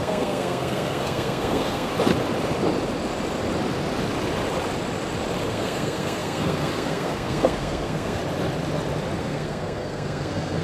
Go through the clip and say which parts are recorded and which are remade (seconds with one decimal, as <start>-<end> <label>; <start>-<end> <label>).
0.0-1.9 remade; 1.9-5.5 recorded; 5.5-8.2 remade; 8.2-9.2 recorded; 9.2-10.6 remade